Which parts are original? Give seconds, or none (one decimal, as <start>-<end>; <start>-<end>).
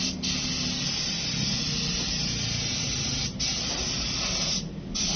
0.0-5.2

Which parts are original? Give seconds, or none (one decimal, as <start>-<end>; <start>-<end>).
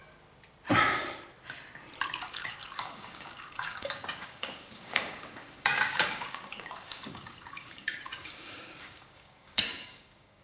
0.0-2.2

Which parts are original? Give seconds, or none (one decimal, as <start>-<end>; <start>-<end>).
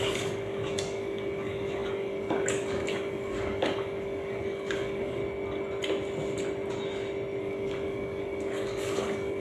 5.2-7.4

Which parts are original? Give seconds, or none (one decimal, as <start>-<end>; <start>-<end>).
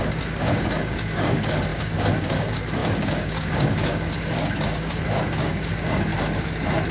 6.1-6.9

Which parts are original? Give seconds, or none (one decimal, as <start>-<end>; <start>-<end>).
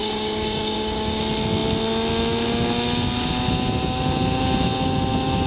1.2-5.5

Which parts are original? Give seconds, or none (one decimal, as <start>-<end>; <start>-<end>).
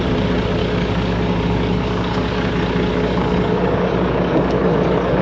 0.0-0.6; 2.5-2.9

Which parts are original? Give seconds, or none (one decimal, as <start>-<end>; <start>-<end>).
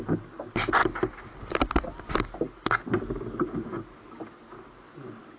0.0-5.4